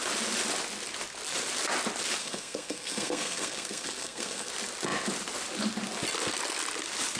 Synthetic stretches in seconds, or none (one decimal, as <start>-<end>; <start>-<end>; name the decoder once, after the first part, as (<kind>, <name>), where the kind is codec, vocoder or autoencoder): 2.2-4.5 (codec, SNAC)